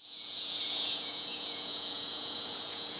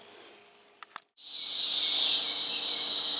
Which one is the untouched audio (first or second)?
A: second